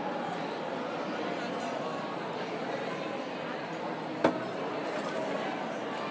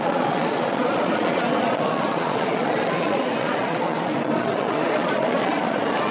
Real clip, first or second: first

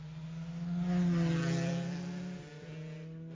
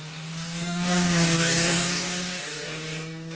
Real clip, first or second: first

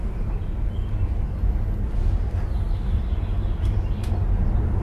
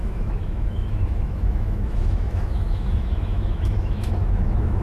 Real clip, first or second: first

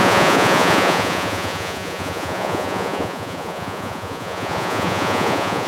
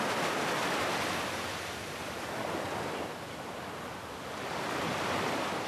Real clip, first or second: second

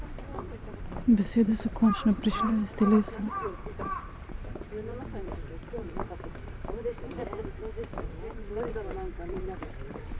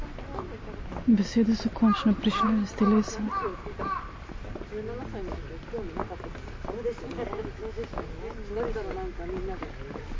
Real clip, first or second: second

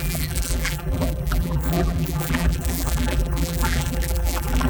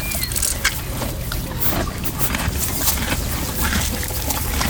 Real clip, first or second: second